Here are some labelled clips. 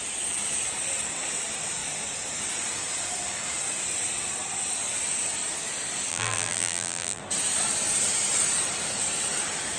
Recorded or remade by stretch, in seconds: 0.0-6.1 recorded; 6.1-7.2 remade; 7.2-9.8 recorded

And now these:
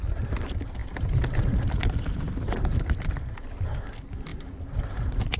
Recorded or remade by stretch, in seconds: 0.0-4.3 recorded; 4.3-5.4 remade

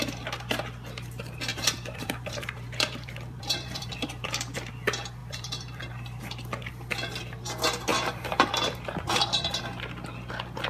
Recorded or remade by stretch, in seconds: 0.0-1.5 recorded; 1.5-4.7 remade; 4.7-5.2 recorded; 5.2-6.2 remade; 6.2-7.9 recorded; 7.9-9.6 remade; 9.6-10.7 recorded

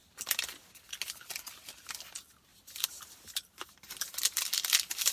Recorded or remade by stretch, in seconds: 0.0-2.5 recorded; 2.5-3.9 remade; 3.9-5.1 recorded

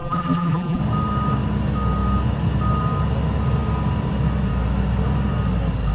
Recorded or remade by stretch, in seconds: 0.0-0.8 remade; 0.8-5.9 recorded